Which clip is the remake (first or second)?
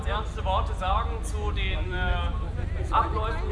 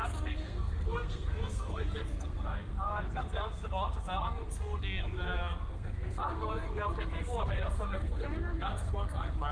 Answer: second